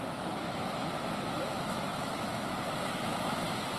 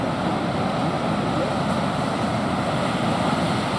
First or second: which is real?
second